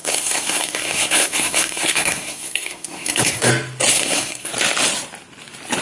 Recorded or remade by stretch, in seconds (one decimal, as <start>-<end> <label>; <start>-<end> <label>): 0.0-3.5 remade; 3.5-3.9 recorded; 3.9-4.5 remade; 4.5-5.8 recorded